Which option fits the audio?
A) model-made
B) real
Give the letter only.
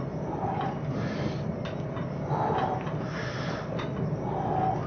B